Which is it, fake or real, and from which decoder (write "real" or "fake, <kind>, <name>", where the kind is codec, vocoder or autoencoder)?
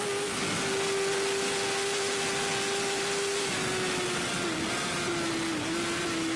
real